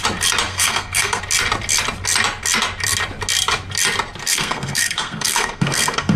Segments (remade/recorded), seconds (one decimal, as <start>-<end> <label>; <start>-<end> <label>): 0.0-0.5 recorded; 0.5-1.2 remade; 1.2-4.3 recorded; 4.3-6.2 remade